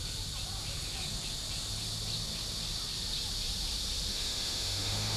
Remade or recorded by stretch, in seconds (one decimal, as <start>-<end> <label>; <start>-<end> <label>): 0.0-4.1 recorded; 4.1-5.2 remade